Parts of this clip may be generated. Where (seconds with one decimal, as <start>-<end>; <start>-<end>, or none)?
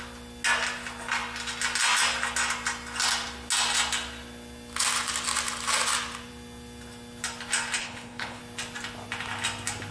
7.8-8.4